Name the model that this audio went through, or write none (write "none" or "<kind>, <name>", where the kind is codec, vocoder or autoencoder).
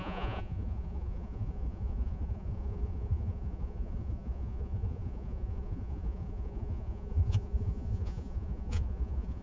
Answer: vocoder, Vocos